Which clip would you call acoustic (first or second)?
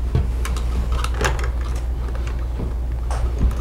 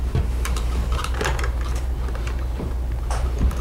first